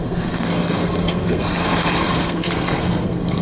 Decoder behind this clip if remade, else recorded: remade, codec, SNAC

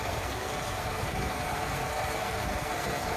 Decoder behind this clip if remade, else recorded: remade, codec, SNAC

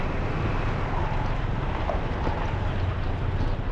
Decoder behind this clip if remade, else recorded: recorded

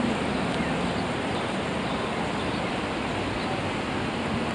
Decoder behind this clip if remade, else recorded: recorded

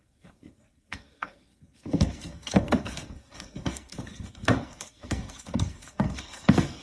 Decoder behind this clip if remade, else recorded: remade, codec, SNAC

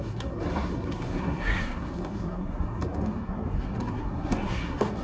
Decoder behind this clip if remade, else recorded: remade, codec, SNAC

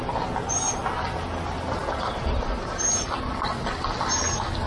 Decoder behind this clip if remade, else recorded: recorded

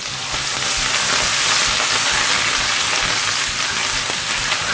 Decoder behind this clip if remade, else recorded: recorded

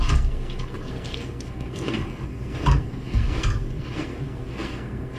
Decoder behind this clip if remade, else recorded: remade, codec, SNAC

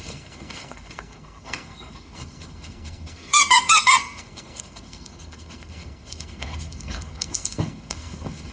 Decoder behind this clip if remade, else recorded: remade, codec, SNAC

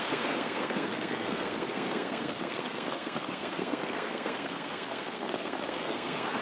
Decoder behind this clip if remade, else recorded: remade, codec, SNAC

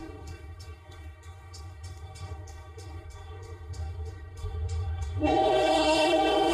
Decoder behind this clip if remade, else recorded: remade, codec, SNAC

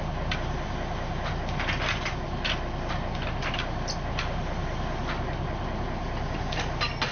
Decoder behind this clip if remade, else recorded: recorded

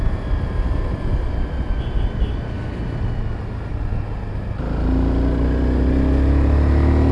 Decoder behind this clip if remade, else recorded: recorded